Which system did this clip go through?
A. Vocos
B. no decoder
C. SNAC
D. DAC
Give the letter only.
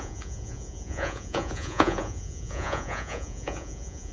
A